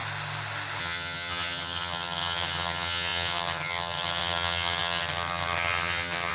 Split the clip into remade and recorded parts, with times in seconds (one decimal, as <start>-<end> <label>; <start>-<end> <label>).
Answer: 0.0-0.8 recorded; 0.8-6.3 remade